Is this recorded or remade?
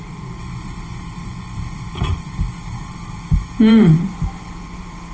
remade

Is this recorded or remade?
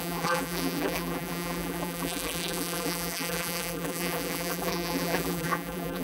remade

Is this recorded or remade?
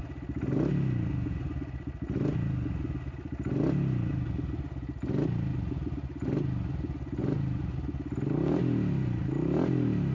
recorded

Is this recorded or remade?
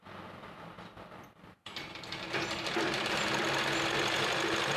recorded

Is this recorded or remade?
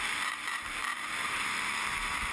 remade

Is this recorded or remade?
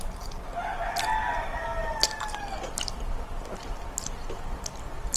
recorded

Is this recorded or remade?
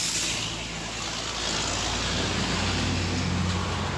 recorded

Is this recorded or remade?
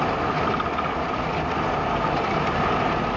recorded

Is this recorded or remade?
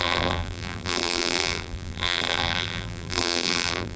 remade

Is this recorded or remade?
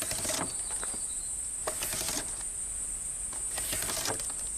recorded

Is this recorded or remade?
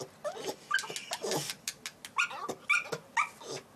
recorded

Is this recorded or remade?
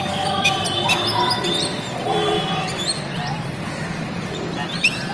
remade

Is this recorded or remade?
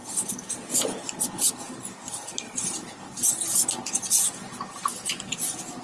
recorded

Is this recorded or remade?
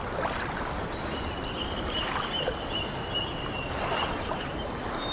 recorded